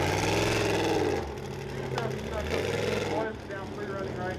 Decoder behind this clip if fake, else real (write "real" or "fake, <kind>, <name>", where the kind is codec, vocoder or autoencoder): real